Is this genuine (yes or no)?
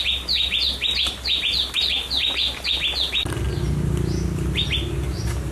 yes